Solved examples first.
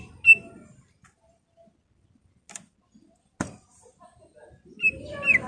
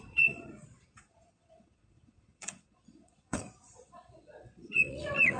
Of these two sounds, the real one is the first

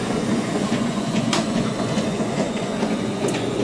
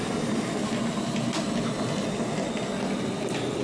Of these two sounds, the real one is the second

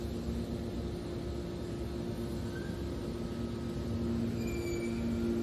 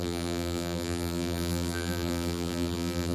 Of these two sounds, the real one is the first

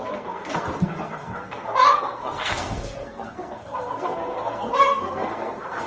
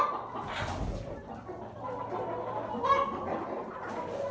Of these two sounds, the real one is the second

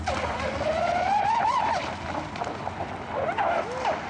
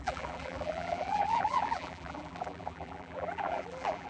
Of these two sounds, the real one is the first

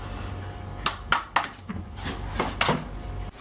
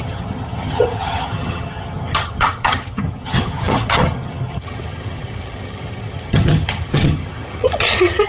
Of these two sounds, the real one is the first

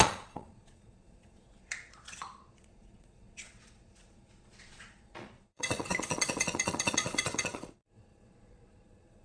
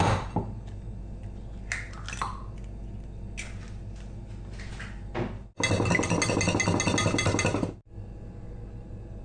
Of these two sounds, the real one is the second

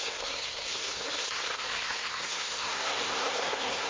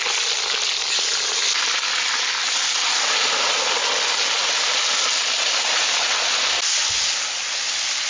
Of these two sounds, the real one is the second